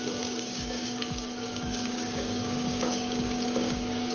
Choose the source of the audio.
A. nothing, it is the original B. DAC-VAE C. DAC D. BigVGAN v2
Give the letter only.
C